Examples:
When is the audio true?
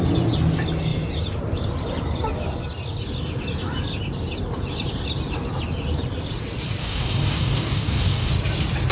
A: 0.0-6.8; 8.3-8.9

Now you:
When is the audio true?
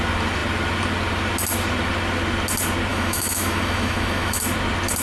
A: 0.0-2.9; 4.4-5.0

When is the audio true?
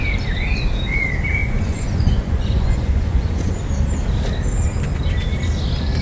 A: 0.0-1.4; 3.5-6.0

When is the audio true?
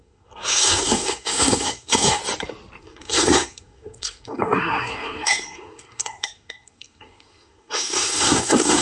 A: 2.2-2.8